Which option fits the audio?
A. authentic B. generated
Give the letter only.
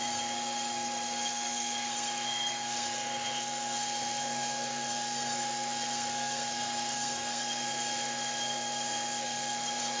B